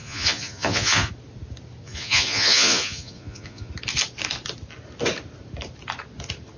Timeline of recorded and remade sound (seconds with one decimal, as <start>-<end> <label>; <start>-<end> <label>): 0.0-1.1 remade; 1.1-1.8 recorded; 1.8-3.7 remade; 3.7-6.6 recorded